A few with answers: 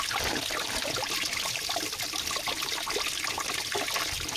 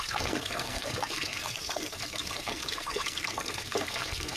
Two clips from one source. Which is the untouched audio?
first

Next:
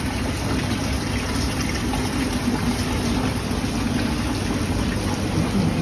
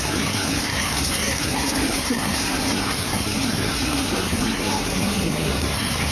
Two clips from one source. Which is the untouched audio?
first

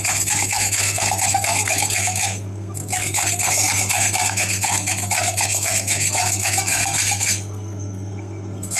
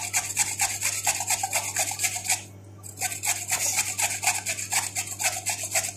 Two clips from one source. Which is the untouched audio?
second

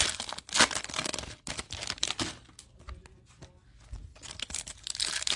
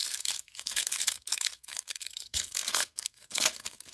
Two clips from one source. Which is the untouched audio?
first